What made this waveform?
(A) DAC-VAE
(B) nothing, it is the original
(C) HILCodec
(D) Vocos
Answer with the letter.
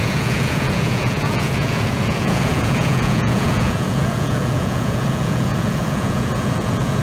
D